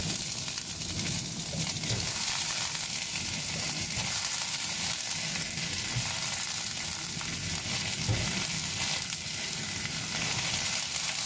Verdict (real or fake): real